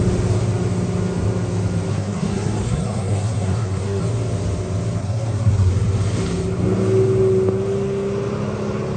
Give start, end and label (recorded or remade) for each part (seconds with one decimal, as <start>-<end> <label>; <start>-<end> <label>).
0.0-1.9 recorded; 1.9-4.0 remade; 4.0-5.0 recorded; 5.0-5.7 remade; 5.7-9.0 recorded